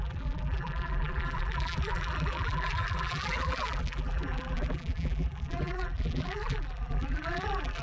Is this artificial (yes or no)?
yes